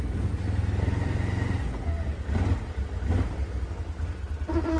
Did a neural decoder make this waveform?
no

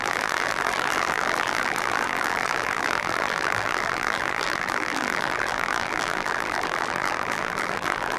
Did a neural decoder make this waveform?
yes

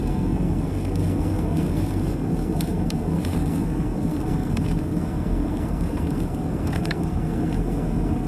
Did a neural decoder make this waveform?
yes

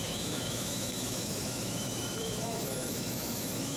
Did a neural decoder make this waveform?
yes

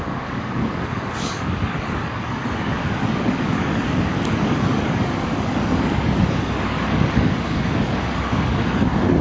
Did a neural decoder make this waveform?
yes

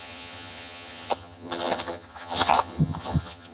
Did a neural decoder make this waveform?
yes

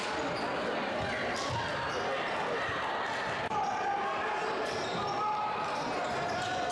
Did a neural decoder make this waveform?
no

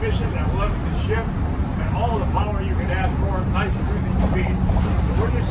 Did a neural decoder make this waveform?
no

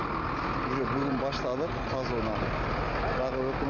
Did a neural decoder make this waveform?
no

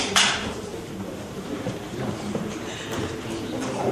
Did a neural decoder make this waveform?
yes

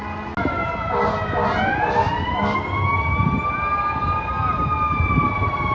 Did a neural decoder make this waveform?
no